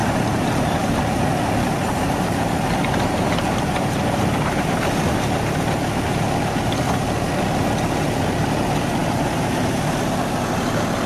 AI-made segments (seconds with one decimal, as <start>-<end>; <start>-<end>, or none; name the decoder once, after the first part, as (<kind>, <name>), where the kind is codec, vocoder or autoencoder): 0.0-4.6 (vocoder, BigVGAN v2); 9.0-9.8